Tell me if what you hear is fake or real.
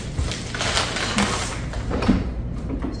real